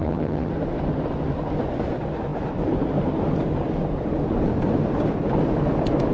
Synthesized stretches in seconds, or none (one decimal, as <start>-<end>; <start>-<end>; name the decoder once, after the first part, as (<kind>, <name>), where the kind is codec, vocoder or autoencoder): 0.0-0.5 (vocoder, HiFi-GAN)